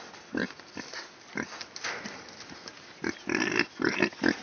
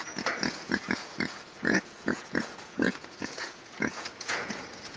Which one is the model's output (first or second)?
second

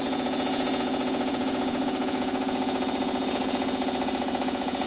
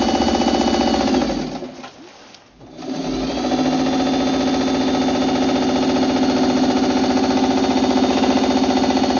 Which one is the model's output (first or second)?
first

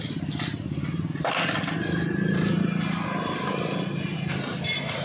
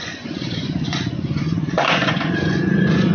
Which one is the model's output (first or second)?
second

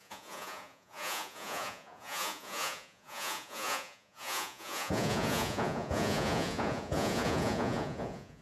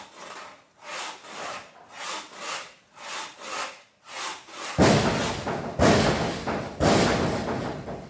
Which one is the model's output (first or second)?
first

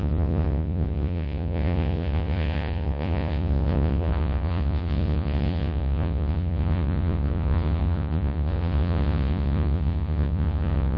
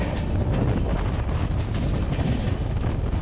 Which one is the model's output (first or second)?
first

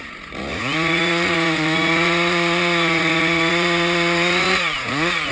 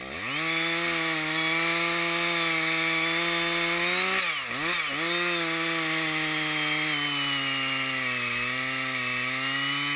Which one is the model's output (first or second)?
first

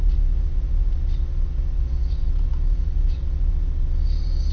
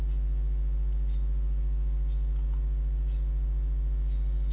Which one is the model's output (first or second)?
first